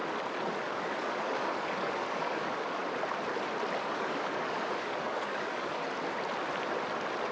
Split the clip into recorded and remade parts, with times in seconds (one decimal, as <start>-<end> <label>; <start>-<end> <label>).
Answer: 0.0-0.8 recorded; 0.8-2.8 remade; 2.8-3.8 recorded; 3.8-5.8 remade; 5.8-7.3 recorded